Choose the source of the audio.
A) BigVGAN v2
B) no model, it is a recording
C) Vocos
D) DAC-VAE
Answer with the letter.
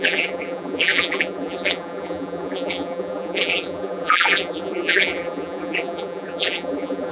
A